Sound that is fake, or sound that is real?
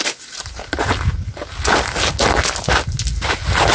real